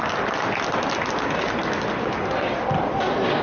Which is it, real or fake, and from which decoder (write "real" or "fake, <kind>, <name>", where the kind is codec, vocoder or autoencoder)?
real